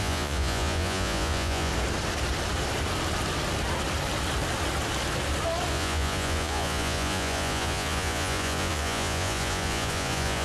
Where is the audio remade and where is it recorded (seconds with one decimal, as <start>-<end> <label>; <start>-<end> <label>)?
0.0-1.7 remade; 1.7-5.7 recorded; 5.7-10.4 remade